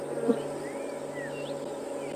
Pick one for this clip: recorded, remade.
recorded